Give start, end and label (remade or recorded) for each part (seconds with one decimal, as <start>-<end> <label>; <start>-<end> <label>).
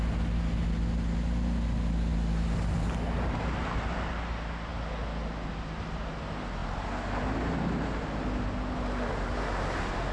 0.0-10.1 recorded